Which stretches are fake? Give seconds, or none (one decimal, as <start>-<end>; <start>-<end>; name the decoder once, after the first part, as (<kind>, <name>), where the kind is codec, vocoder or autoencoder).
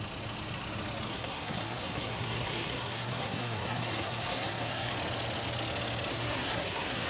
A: 1.1-4.9 (codec, SNAC); 6.1-7.1